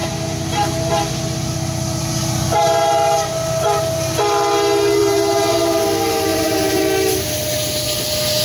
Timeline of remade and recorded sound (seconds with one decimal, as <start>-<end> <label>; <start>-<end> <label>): 0.0-5.0 recorded; 5.0-5.8 remade; 5.8-6.3 recorded; 6.3-6.8 remade; 6.8-8.4 recorded